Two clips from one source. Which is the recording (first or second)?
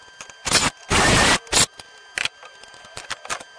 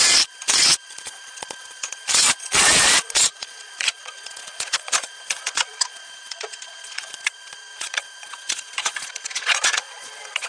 first